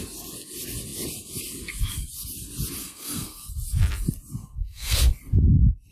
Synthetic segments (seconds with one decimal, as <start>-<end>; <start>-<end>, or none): 2.8-3.5; 4.4-5.1